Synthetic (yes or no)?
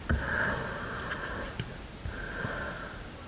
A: no